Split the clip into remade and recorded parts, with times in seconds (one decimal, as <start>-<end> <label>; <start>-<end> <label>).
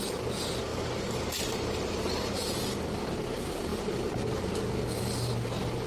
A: 0.0-0.7 recorded; 0.7-2.3 remade; 2.3-3.7 recorded; 3.7-4.5 remade; 4.5-5.9 recorded